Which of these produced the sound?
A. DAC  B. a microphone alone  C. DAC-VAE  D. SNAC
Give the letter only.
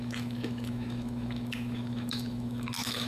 C